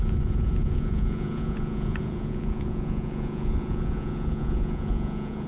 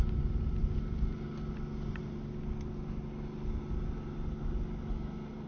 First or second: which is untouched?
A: second